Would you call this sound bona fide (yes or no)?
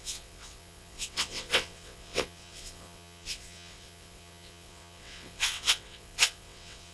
no